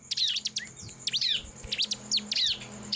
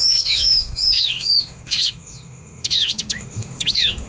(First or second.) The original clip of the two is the first